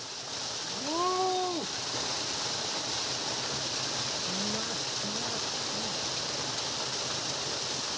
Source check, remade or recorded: recorded